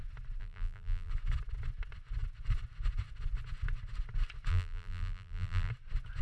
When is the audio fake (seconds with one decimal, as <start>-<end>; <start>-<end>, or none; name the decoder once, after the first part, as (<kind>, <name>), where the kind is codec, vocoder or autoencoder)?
0.4-1.1 (vocoder, BigVGAN v2); 4.5-5.7